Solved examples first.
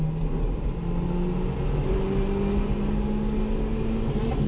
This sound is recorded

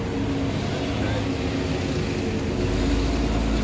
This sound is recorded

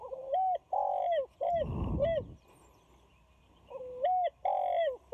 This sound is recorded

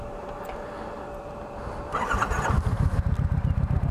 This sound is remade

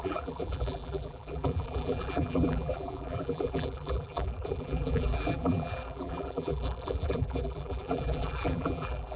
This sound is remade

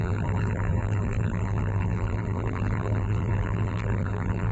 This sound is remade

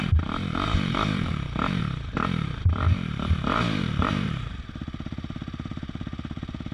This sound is remade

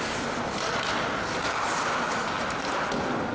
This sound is recorded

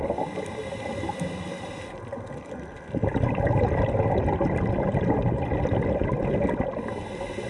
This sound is recorded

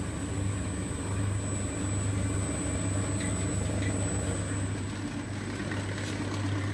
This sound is recorded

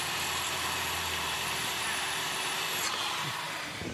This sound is remade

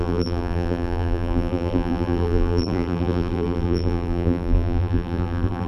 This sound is remade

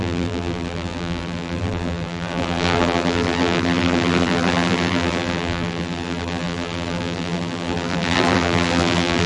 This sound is remade